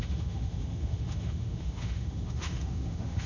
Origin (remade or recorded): remade